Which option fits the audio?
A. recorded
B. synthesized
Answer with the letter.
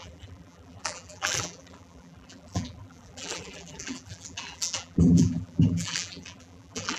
B